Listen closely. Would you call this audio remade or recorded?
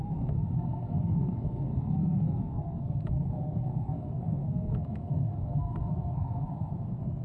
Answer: remade